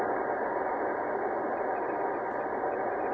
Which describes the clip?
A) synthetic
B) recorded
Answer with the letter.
B